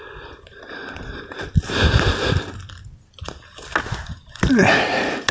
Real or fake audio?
real